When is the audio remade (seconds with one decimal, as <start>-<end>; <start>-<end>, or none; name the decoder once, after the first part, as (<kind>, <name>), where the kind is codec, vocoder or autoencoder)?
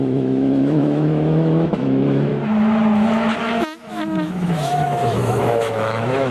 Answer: 0.0-2.3 (autoencoder, DAC-VAE); 3.4-6.3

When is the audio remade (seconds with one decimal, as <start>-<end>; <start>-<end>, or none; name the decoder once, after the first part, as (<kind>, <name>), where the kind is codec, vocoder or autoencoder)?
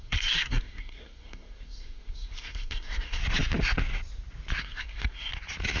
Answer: 0.0-3.2 (codec, SNAC); 4.6-5.3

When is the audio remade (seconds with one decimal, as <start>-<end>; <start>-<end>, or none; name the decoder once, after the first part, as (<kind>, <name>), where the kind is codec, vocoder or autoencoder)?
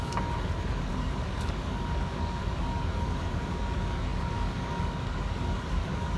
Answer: 0.0-6.2 (codec, DAC)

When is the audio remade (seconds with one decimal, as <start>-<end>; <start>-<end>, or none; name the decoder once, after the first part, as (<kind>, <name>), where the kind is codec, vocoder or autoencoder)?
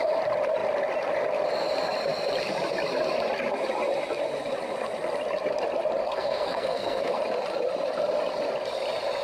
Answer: 6.0-7.2 (codec, SNAC)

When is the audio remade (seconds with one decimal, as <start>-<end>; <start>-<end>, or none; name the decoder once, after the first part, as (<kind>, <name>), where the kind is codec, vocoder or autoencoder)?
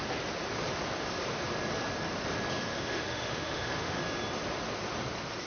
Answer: 2.7-4.0 (autoencoder, DAC-VAE)